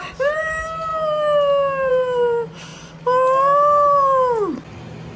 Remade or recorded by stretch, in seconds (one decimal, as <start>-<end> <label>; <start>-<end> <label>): 0.0-0.9 remade; 0.9-1.9 recorded; 1.9-2.7 remade; 2.7-5.2 recorded